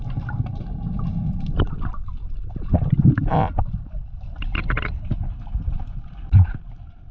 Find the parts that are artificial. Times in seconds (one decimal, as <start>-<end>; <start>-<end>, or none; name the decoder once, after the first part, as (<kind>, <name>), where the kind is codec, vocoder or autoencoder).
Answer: none